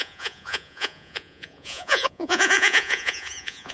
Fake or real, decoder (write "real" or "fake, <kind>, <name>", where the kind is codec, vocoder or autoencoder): fake, vocoder, Vocos